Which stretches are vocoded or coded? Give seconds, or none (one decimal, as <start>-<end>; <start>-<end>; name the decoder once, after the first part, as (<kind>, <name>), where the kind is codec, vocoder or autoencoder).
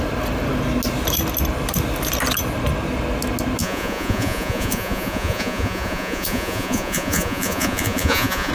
3.6-8.5 (vocoder, Vocos)